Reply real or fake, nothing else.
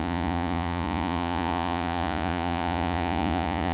fake